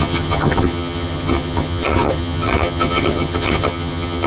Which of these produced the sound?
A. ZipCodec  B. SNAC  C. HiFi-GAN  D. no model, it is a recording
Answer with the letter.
C